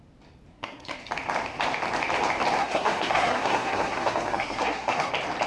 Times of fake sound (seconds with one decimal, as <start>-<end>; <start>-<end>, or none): 0.5-1.0; 2.6-5.1